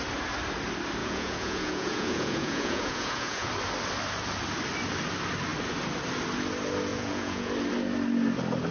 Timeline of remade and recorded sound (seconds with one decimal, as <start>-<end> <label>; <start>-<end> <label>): 0.0-1.0 recorded; 1.0-3.5 remade; 3.5-6.9 recorded; 6.9-7.5 remade; 7.5-8.7 recorded